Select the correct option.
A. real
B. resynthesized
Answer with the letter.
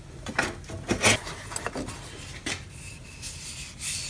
A